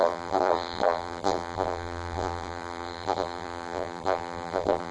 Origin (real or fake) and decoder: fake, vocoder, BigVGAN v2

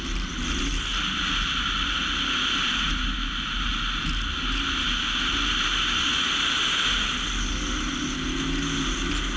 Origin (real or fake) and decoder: real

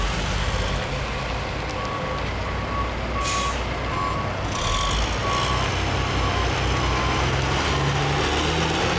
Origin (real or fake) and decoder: real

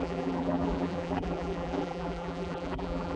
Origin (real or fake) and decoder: fake, vocoder, BigVGAN v2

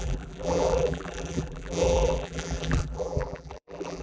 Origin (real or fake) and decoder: fake, vocoder, BigVGAN v2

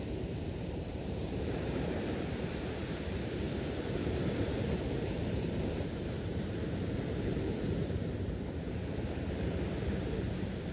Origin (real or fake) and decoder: fake, vocoder, BigVGAN v2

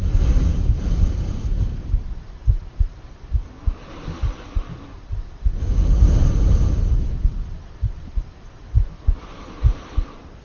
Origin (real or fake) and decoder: real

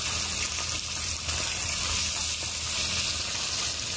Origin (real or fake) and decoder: real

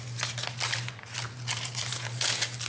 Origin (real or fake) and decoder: real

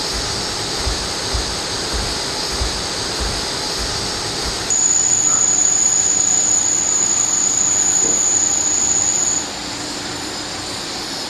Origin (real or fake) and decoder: real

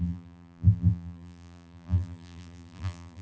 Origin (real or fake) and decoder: fake, vocoder, BigVGAN v2